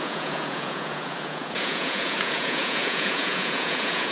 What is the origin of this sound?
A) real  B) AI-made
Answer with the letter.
B